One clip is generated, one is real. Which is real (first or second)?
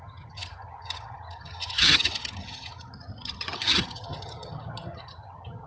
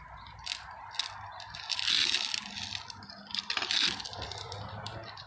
second